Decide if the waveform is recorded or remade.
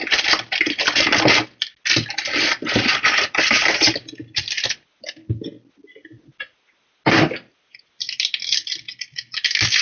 recorded